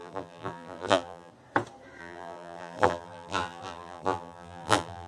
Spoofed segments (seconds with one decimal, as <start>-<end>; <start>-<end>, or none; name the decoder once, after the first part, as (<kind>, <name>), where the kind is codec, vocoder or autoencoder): 0.0-1.3 (vocoder, BigVGAN v2); 2.0-5.1